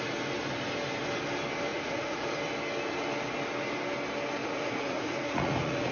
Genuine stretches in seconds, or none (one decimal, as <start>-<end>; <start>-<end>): 0.0-1.7; 2.3-4.4